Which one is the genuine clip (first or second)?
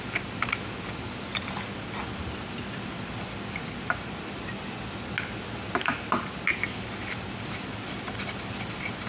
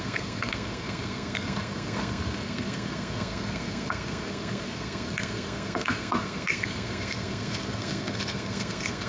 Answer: first